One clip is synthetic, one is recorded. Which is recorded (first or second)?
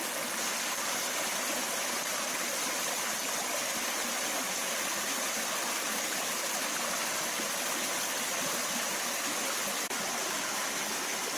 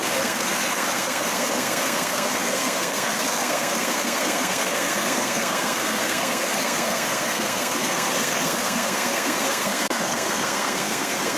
first